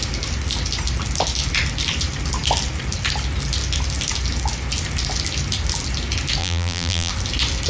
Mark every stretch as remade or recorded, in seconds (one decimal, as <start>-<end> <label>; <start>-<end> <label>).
0.0-6.4 recorded; 6.4-7.1 remade; 7.1-7.7 recorded